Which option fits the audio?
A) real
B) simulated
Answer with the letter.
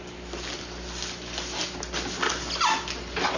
A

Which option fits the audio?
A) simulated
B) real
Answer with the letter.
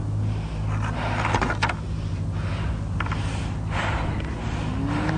B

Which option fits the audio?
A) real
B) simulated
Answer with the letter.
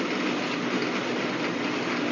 A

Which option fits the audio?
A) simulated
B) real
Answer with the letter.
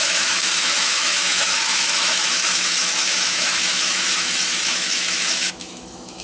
A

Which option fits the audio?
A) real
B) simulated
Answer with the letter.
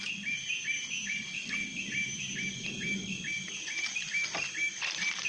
A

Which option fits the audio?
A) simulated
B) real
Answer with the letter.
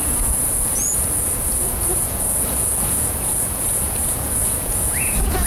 A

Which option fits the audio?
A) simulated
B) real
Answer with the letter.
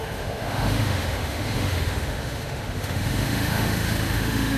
A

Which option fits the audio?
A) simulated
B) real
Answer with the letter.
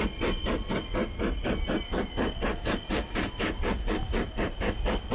B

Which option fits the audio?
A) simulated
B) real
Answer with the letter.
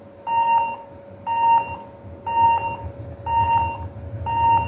B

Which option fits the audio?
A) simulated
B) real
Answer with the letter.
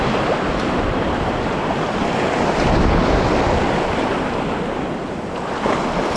B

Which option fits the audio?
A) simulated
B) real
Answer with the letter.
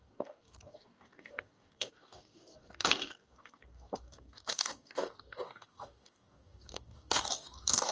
A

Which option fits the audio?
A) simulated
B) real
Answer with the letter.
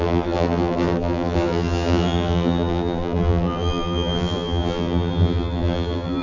A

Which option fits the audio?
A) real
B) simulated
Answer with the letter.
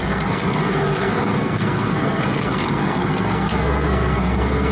B